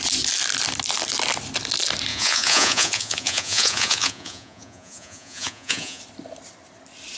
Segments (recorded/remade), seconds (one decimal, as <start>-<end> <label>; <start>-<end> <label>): 0.0-2.1 recorded; 2.1-6.0 remade; 6.0-7.2 recorded